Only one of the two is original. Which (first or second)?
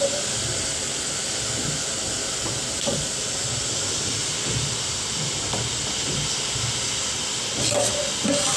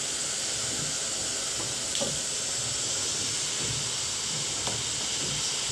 second